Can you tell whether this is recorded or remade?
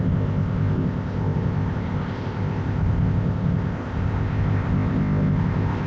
remade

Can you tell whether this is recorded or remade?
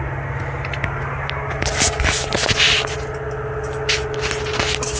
recorded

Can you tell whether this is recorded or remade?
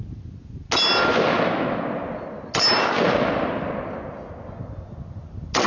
recorded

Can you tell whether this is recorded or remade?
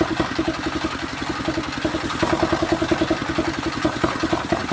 recorded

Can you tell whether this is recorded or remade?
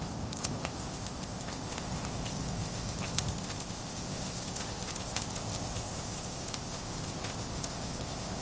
remade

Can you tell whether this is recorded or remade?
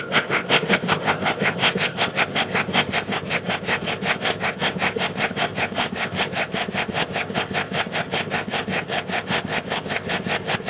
remade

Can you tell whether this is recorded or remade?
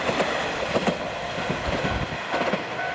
recorded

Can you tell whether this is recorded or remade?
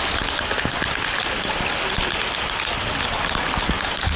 recorded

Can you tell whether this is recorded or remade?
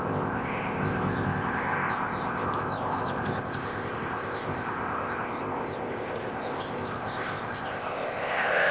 remade